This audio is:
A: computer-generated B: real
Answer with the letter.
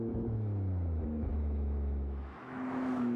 A